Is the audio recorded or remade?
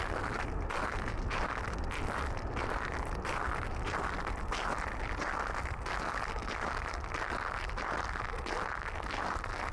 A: recorded